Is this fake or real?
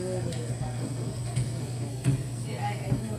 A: fake